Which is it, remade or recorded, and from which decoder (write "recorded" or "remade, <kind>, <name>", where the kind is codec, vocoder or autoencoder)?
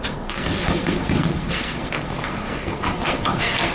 remade, codec, SNAC